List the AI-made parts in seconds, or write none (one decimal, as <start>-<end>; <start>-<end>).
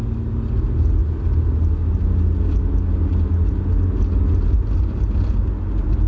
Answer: none